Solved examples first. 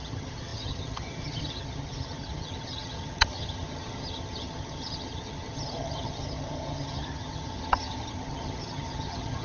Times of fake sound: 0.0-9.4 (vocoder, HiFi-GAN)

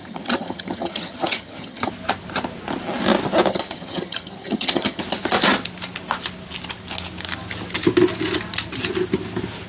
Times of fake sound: 0.0-1.9 (vocoder, HiFi-GAN); 3.5-5.0

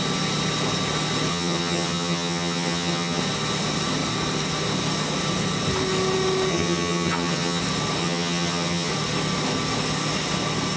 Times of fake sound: 1.3-3.2 (vocoder, HiFi-GAN); 6.5-7.6; 8.0-8.9